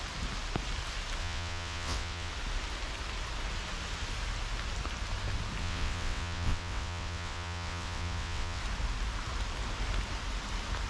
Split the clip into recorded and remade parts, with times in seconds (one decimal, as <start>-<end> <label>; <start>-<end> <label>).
0.0-1.2 recorded; 1.2-2.3 remade; 2.3-5.6 recorded; 5.6-8.6 remade; 8.6-10.9 recorded